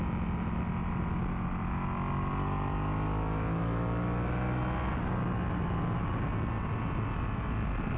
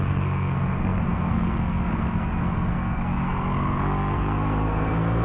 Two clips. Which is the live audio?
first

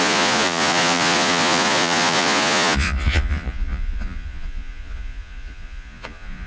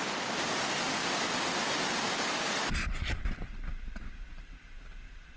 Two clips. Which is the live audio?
second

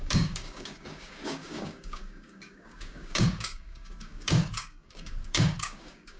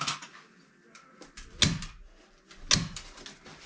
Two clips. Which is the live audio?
second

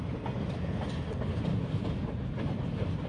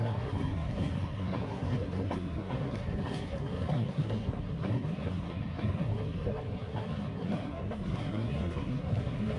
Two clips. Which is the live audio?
first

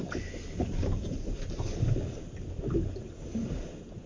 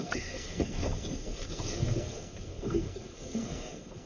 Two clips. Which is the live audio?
first